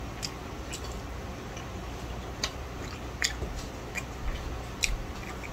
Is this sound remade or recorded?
recorded